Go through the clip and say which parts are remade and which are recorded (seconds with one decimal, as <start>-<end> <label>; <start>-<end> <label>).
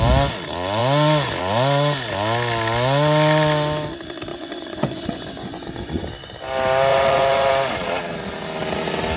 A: 0.0-4.3 recorded; 4.3-6.1 remade; 6.1-6.9 recorded; 6.9-7.5 remade; 7.5-9.2 recorded